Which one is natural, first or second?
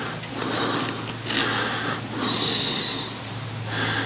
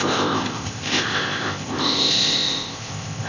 first